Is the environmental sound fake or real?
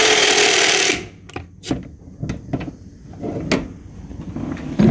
real